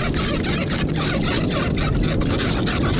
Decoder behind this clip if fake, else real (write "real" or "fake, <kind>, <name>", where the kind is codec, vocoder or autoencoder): real